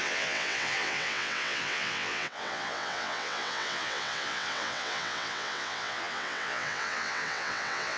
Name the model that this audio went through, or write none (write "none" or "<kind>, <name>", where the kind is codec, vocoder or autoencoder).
vocoder, WaveNeXt